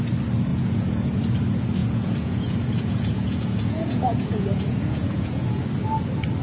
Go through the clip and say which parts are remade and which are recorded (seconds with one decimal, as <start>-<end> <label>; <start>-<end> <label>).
0.0-0.5 recorded; 0.5-1.2 remade; 1.2-1.8 recorded; 1.8-5.6 remade; 5.6-6.4 recorded